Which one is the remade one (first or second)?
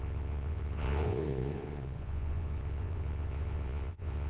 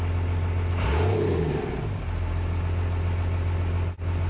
first